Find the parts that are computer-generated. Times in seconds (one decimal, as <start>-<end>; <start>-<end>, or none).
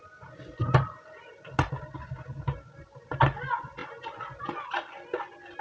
none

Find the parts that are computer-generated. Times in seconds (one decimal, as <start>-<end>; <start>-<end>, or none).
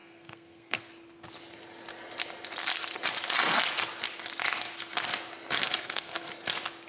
0.0-0.9; 5.6-6.3